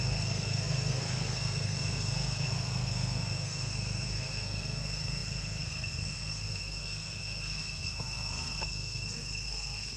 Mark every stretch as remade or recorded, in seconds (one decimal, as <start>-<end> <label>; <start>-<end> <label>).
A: 0.0-10.0 remade

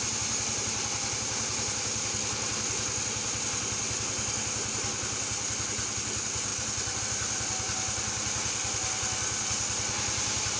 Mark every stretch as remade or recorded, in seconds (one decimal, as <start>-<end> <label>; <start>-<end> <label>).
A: 0.0-10.6 recorded